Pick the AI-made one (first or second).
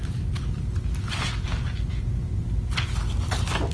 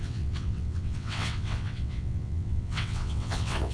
second